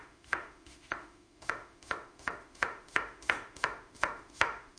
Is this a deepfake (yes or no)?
yes